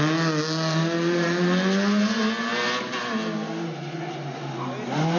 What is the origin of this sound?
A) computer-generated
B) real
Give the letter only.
B